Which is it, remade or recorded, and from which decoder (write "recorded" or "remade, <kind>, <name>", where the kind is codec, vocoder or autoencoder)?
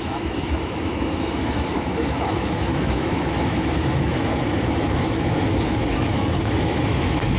remade, autoencoder, DAC-VAE